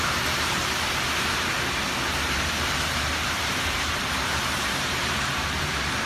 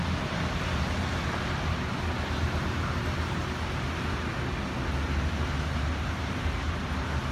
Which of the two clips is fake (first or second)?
first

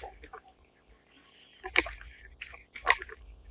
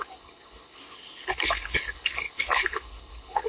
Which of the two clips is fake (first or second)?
second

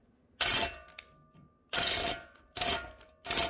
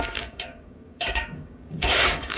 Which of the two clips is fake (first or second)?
second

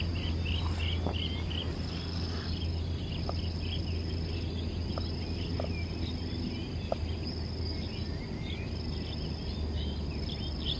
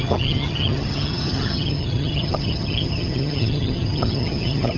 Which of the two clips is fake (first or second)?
second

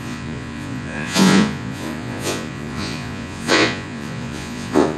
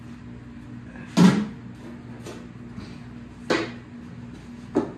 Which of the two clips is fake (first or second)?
first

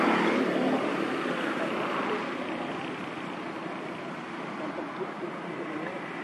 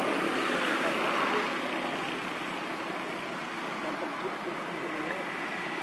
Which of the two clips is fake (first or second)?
first